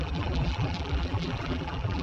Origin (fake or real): fake